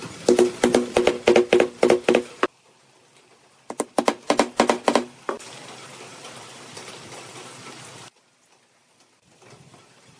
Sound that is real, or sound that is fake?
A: real